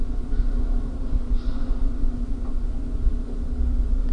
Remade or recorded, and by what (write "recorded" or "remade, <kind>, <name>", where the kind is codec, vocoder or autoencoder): recorded